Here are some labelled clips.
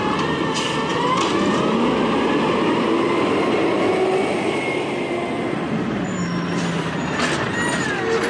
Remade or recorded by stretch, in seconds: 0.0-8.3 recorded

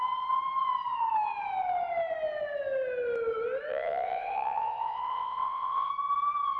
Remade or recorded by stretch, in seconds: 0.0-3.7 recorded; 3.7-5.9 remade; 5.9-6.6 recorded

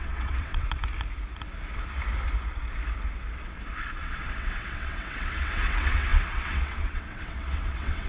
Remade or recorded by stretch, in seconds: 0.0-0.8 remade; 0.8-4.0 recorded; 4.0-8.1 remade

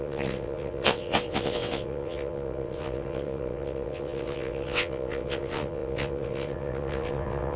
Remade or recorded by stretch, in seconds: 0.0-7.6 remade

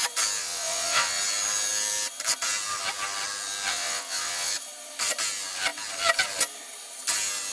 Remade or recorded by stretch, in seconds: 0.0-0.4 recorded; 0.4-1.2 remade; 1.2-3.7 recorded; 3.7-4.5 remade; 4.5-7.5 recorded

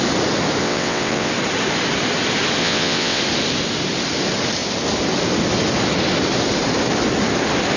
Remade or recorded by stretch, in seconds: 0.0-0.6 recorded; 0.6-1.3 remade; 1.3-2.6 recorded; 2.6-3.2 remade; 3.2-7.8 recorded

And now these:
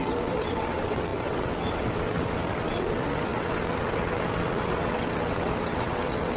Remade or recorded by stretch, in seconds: 0.0-6.4 remade